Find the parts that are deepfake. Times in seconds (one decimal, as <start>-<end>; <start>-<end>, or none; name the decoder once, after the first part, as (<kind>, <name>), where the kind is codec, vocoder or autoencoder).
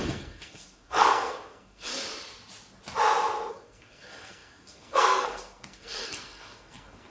0.0-1.9 (codec, SNAC); 3.5-7.1